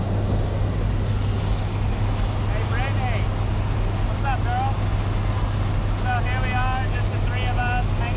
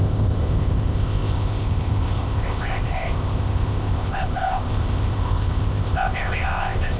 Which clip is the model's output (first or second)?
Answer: second